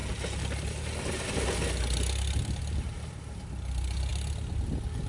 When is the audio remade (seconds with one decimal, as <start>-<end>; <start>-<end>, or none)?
none